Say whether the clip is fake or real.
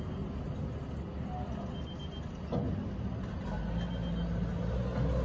real